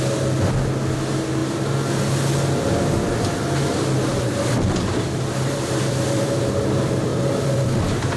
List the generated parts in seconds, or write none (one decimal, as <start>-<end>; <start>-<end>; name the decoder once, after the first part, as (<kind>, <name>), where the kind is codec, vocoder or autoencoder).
4.1-6.6 (vocoder, BigVGAN v2); 7.1-8.2